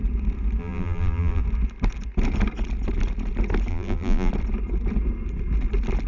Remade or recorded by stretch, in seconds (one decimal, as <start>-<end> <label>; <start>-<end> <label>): 0.0-0.6 recorded; 0.6-1.4 remade; 1.4-3.7 recorded; 3.7-4.3 remade; 4.3-6.1 recorded